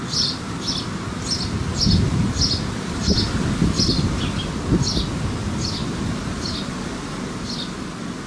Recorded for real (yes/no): yes